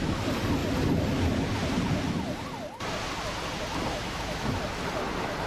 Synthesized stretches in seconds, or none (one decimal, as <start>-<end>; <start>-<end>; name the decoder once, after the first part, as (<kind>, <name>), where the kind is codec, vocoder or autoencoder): 4.0-4.6 (autoencoder, DAC-VAE)